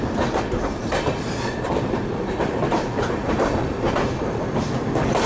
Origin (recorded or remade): remade